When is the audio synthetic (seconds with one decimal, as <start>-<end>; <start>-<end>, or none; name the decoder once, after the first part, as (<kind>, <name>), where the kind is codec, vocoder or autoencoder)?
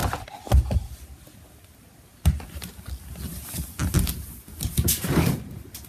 none